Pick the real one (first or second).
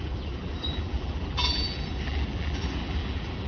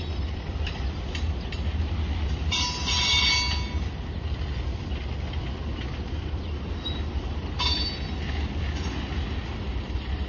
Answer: second